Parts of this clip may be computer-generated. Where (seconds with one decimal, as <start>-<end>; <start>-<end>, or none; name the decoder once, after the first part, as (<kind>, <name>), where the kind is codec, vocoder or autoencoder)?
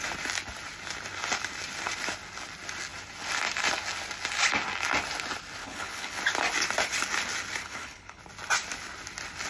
5.6-6.2 (codec, HILCodec); 7.6-8.2